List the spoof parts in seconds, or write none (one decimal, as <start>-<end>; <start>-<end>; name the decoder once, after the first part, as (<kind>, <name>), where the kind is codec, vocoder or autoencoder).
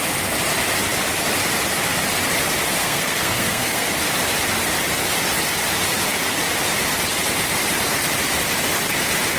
2.8-3.9 (codec, SNAC)